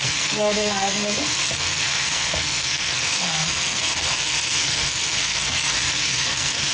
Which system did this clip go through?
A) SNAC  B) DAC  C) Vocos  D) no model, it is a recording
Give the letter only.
A